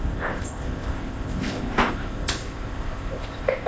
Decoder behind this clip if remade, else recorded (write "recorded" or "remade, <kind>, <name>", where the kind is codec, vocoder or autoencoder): remade, codec, ZipCodec